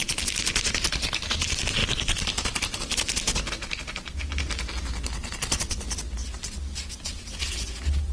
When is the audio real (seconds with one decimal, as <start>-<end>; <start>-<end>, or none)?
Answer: 0.0-8.1